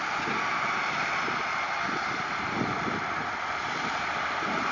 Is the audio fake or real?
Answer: real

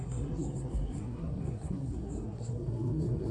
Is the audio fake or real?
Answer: fake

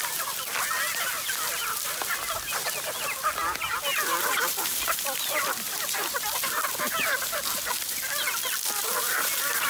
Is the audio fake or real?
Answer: real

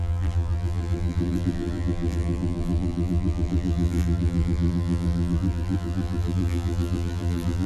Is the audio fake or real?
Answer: fake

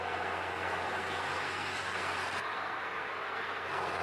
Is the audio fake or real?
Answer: fake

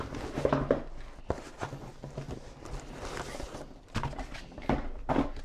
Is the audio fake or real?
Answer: real